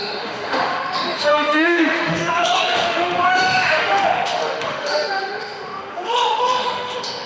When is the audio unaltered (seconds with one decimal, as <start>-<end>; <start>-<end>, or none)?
none

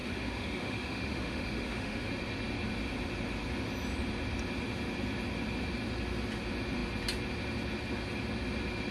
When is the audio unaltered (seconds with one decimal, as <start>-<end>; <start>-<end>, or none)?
2.1-8.9

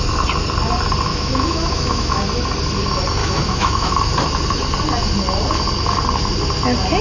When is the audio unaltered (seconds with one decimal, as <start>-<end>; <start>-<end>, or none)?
0.0-1.1; 2.2-3.2; 4.0-7.0

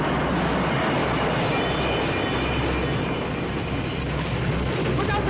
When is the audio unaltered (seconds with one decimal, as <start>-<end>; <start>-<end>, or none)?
0.0-5.3

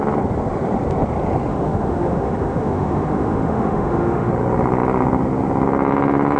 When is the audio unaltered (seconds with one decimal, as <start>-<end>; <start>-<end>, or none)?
0.0-1.5; 4.3-6.4

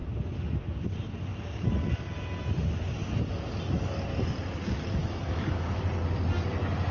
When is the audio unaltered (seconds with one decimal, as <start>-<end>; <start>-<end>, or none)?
0.0-5.0; 5.8-6.9

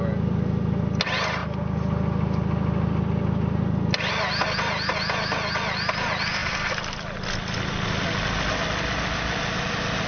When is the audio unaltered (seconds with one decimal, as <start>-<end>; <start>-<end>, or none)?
0.0-10.1